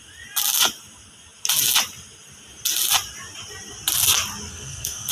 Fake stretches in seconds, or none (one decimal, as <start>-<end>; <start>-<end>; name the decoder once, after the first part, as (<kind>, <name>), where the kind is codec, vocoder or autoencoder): 4.5-5.1 (codec, SNAC)